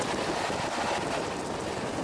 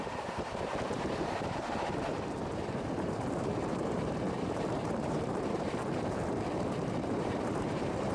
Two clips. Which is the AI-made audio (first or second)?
second